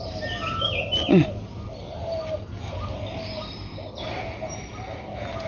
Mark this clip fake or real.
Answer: real